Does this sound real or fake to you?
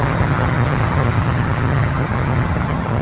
fake